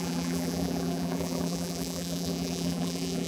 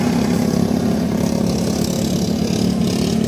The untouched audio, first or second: second